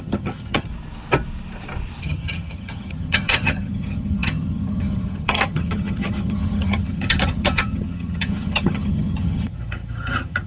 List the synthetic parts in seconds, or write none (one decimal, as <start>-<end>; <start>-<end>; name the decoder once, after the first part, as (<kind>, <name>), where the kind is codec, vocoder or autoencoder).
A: 0.0-0.7 (vocoder, HiFi-GAN); 2.0-10.5